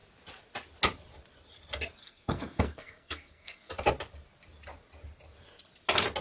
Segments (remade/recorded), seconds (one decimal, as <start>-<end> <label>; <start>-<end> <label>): 0.0-2.0 recorded; 2.0-3.7 remade; 3.7-6.2 recorded